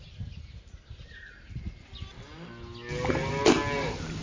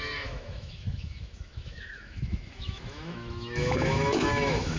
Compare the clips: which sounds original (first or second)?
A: first